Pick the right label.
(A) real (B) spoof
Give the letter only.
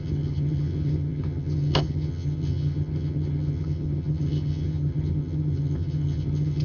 B